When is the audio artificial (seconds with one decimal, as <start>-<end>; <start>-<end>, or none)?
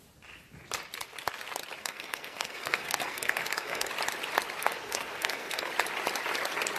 1.8-3.9; 4.6-5.7